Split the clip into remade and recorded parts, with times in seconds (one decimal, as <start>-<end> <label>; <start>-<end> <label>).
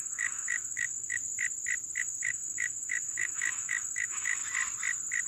0.0-1.2 remade; 1.2-2.0 recorded; 2.0-4.4 remade; 4.4-5.3 recorded